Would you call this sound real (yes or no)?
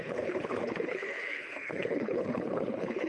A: no